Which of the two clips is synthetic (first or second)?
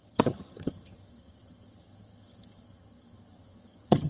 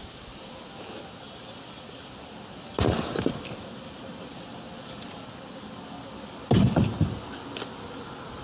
first